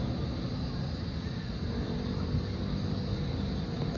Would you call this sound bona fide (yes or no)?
yes